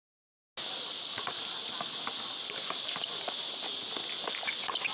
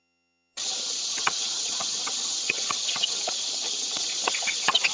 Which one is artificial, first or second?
second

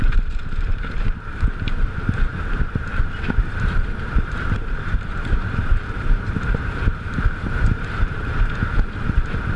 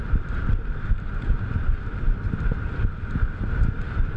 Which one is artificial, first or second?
first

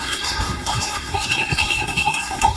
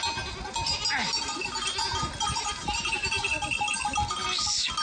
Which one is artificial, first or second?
first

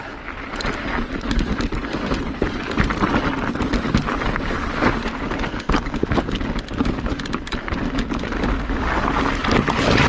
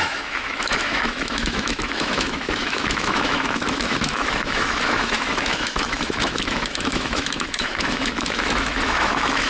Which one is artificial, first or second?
second